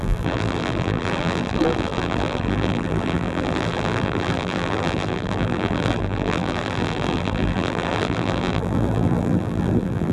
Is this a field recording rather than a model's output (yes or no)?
no